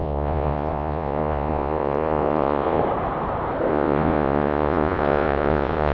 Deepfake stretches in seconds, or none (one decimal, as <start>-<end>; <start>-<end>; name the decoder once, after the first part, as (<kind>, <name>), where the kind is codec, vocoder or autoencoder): 0.0-2.8 (vocoder, Vocos); 3.7-5.9